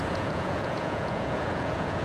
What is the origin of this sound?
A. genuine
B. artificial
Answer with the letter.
B